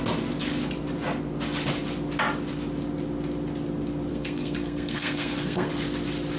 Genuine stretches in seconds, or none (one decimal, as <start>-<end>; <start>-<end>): 0.0-4.1; 5.7-6.4